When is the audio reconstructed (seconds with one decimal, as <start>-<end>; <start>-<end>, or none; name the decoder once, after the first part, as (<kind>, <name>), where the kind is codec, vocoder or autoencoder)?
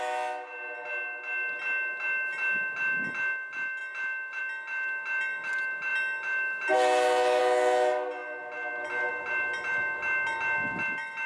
none